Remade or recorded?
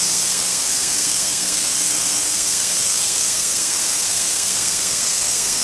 remade